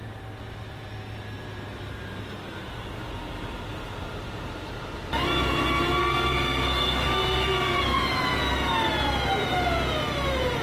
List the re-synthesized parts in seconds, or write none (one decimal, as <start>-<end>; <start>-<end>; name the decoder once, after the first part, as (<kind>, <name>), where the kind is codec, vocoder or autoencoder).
6.0-8.0 (codec, SNAC)